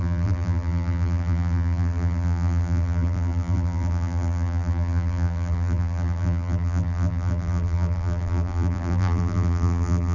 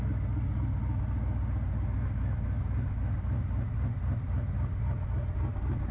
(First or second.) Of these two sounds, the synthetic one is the first